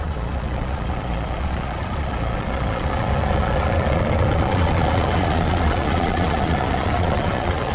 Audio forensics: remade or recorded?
remade